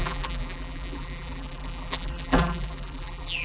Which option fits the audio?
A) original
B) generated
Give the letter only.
B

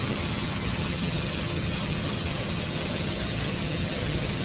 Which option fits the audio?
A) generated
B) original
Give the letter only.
A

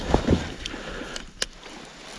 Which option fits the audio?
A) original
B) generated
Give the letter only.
A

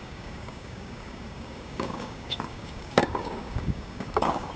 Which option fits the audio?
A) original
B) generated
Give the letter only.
B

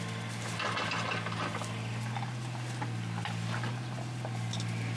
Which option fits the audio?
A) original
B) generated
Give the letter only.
A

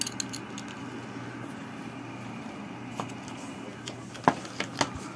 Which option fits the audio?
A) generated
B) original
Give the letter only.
B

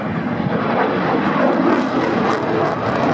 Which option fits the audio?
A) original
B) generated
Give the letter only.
A